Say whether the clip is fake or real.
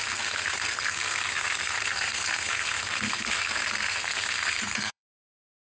fake